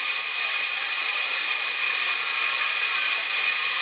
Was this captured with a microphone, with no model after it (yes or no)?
yes